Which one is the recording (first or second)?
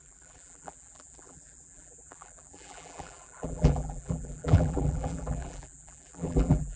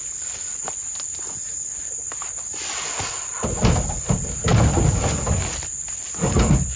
second